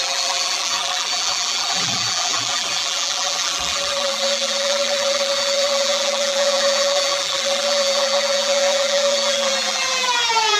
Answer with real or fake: fake